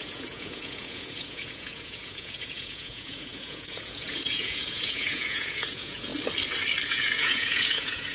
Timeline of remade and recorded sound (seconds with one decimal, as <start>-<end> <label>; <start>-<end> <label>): 0.0-6.1 remade; 6.1-6.9 recorded; 6.9-8.1 remade